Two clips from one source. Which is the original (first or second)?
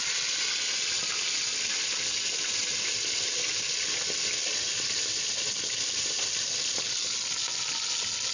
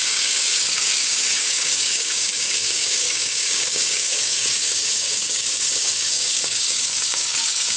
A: first